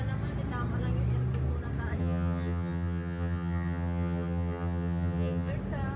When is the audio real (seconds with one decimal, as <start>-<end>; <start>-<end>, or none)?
0.0-2.0; 5.5-6.0